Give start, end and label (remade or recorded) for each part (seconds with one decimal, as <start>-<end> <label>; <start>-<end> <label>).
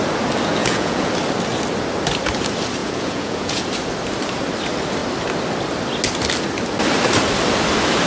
0.0-0.6 recorded; 0.6-1.1 remade; 1.1-2.8 recorded; 2.8-3.6 remade; 3.6-8.1 recorded